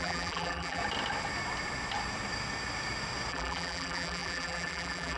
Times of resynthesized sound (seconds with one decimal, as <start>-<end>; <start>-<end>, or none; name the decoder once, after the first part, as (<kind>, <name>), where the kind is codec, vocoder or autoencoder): 0.0-0.8 (vocoder, BigVGAN v2); 3.3-5.2